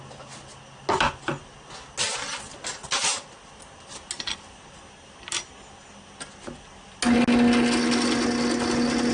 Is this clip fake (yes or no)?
no